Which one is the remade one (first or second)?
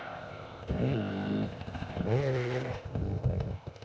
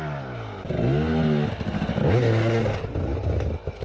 first